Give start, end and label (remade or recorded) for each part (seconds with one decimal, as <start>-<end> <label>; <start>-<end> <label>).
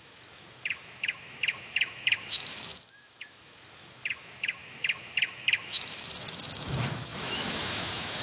0.0-8.2 remade